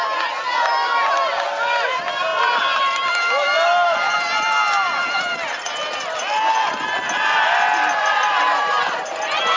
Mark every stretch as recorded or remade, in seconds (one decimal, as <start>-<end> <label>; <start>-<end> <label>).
0.0-9.6 recorded